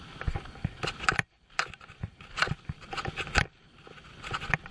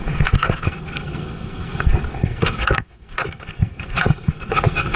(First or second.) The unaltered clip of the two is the first